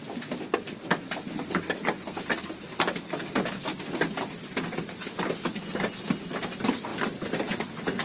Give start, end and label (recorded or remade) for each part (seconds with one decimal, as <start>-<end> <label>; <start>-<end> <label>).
0.0-8.0 recorded